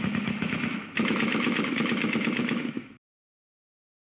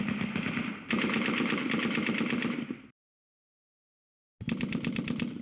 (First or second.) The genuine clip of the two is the second